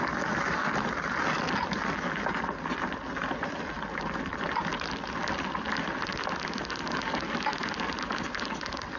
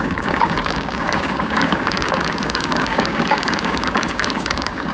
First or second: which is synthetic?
second